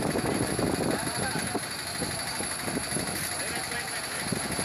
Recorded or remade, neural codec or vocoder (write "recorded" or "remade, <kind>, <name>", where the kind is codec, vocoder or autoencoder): recorded